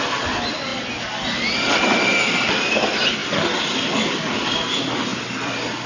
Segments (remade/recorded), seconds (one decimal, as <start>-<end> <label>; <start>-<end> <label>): 0.0-5.9 recorded